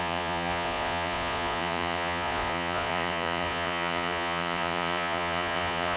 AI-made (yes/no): yes